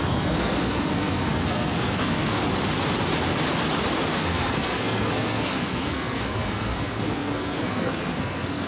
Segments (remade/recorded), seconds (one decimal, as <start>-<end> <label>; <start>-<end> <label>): 0.0-2.4 remade; 2.4-4.1 recorded; 4.1-8.7 remade